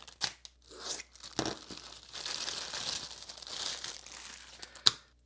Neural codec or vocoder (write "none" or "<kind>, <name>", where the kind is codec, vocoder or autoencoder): none